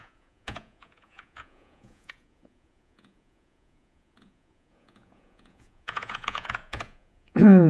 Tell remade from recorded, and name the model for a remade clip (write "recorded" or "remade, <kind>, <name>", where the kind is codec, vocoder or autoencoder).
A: remade, vocoder, Vocos